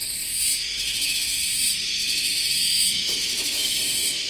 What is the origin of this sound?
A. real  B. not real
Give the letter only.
B